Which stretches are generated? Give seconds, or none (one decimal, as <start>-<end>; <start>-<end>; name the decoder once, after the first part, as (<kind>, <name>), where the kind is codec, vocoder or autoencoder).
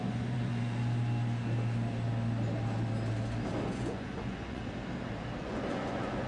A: 0.0-0.8 (vocoder, Vocos); 3.6-4.6; 5.4-6.3